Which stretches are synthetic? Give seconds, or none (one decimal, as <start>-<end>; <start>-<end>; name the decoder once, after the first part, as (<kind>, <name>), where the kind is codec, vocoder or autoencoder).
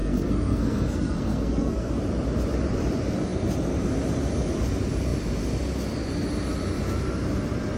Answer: 0.0-1.9 (codec, SNAC)